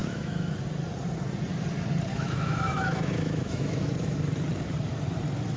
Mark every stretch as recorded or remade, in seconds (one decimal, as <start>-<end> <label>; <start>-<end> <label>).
0.0-0.5 remade; 0.5-2.1 recorded; 2.1-3.9 remade; 3.9-5.6 recorded